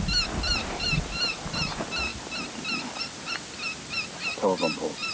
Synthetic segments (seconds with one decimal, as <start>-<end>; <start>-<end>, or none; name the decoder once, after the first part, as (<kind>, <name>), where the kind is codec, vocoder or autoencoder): none